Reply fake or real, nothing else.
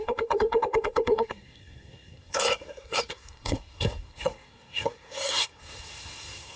fake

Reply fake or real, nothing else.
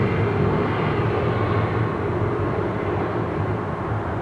real